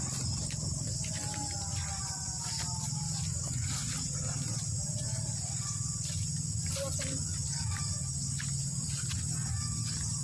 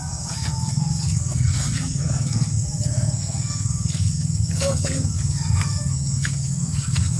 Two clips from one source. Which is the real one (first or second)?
first